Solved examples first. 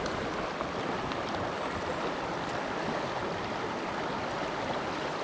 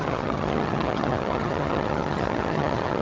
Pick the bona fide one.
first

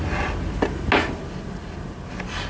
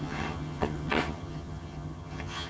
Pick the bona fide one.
first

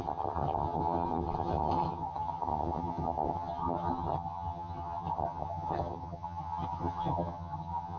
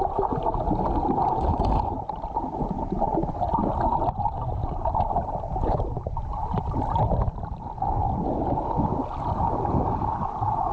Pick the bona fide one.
second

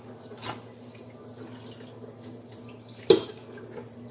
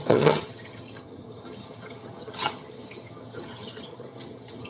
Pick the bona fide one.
first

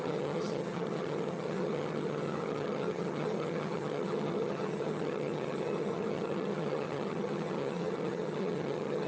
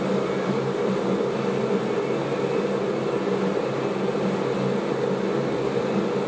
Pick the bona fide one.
second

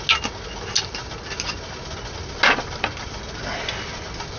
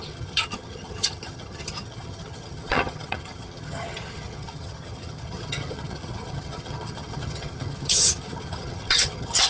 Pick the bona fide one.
first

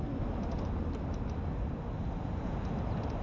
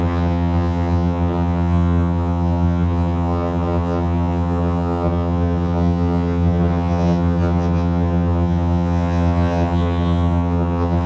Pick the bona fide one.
first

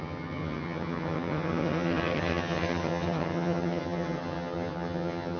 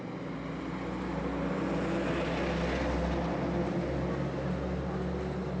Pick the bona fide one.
second